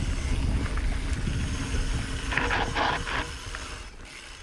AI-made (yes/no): no